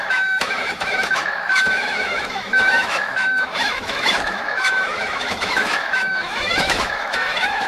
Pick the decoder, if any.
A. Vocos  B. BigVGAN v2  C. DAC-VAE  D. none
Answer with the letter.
C